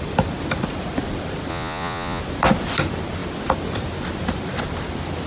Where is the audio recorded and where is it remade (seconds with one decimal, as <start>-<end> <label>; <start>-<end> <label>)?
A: 0.0-1.5 recorded; 1.5-2.2 remade; 2.2-5.3 recorded